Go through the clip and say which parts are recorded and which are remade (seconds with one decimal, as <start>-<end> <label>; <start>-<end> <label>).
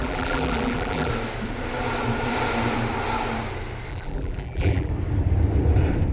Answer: 0.0-1.1 remade; 1.1-3.9 recorded; 3.9-4.9 remade; 4.9-6.1 recorded